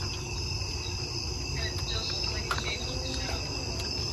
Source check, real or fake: real